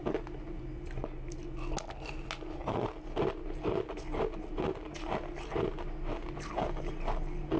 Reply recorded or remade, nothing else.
recorded